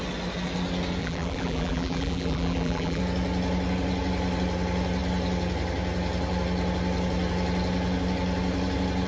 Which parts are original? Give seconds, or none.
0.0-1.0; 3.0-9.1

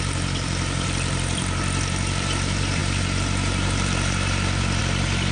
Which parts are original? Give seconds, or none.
none

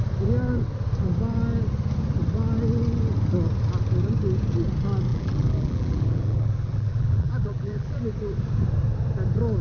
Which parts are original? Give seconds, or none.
0.0-5.1; 8.0-9.6

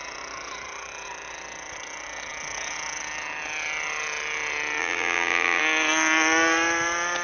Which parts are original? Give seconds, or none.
0.0-4.8; 5.6-7.2

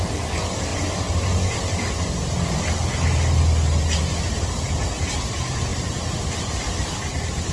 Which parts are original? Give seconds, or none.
0.0-0.7; 1.9-5.7; 6.7-7.5

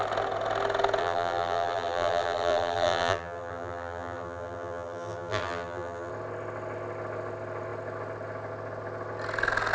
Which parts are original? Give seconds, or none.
0.0-1.0; 6.1-9.7

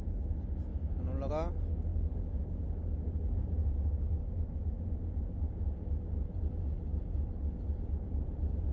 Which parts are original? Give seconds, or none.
0.0-8.7

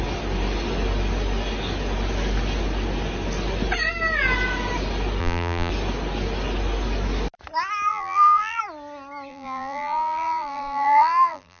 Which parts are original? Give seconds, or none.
0.0-5.2; 5.7-7.9; 8.6-9.3